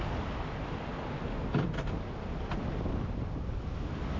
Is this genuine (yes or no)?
yes